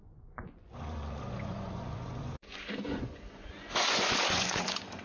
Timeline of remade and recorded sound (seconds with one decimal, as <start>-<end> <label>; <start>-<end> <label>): 0.0-5.0 remade